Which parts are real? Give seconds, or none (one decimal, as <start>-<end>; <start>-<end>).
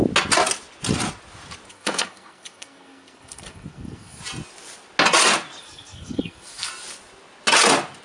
0.0-1.7; 4.2-5.6; 6.7-8.0